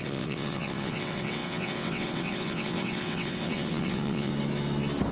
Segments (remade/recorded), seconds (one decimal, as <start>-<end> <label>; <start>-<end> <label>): 0.0-4.3 remade; 4.3-5.1 recorded